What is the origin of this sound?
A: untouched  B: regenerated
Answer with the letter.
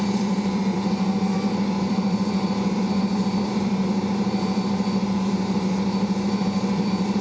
B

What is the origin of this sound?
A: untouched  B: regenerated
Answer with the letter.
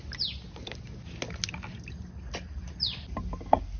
A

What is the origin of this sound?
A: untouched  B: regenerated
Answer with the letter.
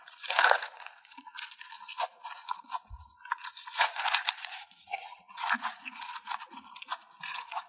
B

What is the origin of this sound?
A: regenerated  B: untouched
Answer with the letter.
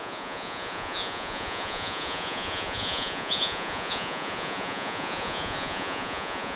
A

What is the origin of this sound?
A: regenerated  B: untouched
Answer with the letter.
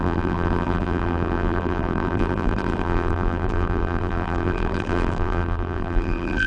A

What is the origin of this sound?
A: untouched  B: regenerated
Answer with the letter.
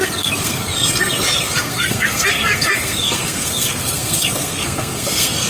B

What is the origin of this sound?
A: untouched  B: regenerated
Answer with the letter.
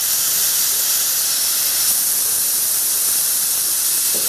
A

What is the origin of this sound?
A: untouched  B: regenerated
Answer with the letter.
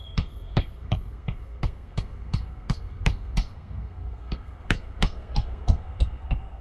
B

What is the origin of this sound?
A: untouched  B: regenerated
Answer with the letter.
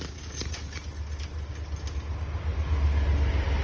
A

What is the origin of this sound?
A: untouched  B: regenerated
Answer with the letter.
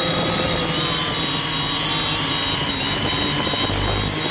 A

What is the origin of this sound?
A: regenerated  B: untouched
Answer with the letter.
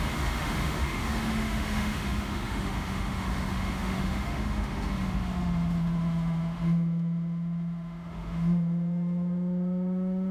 A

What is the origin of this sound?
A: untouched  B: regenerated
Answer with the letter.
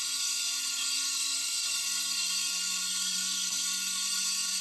B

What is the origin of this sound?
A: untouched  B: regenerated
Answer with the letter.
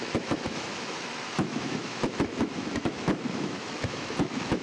B